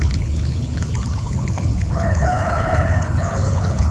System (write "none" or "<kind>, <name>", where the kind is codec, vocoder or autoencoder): codec, HILCodec